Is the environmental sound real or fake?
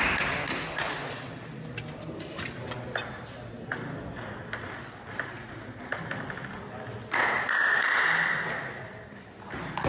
real